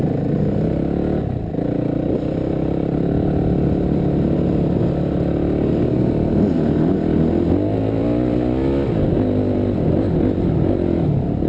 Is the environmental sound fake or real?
real